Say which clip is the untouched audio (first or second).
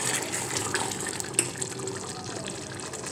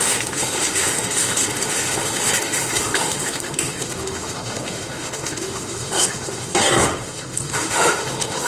first